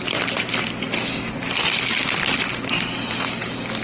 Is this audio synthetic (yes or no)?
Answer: no